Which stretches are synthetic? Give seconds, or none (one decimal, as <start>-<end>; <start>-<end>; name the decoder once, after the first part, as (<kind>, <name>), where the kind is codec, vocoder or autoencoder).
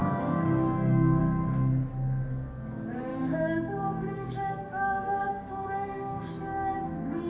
0.0-1.2 (codec, DAC); 3.1-6.3